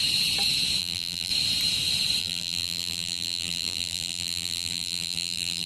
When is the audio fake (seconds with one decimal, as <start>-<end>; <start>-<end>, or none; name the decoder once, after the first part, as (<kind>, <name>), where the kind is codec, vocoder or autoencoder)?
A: 0.8-1.3 (vocoder, BigVGAN v2); 2.2-5.7